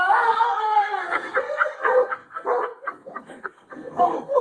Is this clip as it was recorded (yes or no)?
no